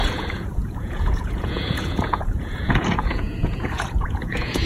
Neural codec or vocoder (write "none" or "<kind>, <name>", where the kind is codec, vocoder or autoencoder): vocoder, Vocos